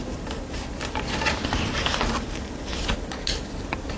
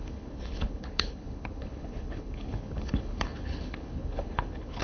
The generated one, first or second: second